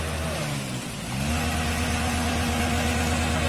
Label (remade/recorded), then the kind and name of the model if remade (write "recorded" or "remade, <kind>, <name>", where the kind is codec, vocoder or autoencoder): recorded